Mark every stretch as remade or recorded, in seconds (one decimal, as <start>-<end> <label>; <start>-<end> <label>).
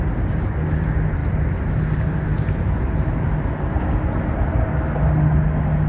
0.0-5.9 recorded